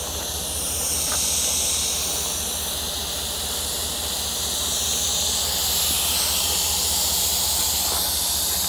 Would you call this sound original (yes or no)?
yes